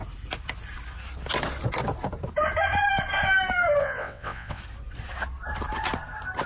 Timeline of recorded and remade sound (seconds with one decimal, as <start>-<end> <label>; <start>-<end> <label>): 0.0-3.8 recorded; 3.8-4.6 remade; 4.6-6.5 recorded

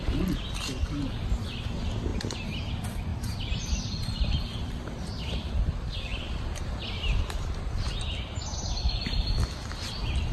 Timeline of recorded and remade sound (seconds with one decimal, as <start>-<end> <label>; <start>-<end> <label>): 0.0-2.1 recorded; 2.1-2.7 remade; 2.7-3.1 recorded; 3.1-5.5 remade; 5.5-6.1 recorded; 6.1-7.6 remade; 7.6-10.3 recorded

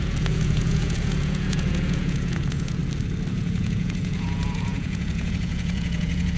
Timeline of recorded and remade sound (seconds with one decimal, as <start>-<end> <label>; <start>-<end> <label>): 0.0-2.8 remade; 2.8-3.3 recorded; 3.3-6.4 remade

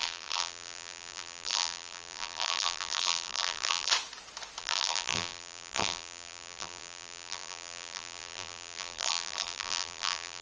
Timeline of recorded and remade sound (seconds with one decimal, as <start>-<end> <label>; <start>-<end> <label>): 0.0-3.9 remade; 3.9-4.6 recorded; 4.6-10.4 remade

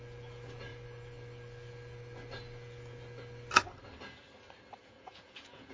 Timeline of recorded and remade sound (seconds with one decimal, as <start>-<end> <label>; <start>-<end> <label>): 0.0-4.8 recorded; 4.8-5.7 remade